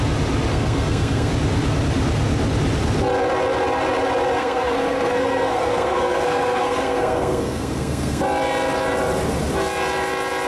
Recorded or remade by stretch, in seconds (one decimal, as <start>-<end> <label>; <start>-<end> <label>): 0.0-0.5 recorded; 0.5-1.3 remade; 1.3-4.4 recorded; 4.4-8.2 remade; 8.2-10.5 recorded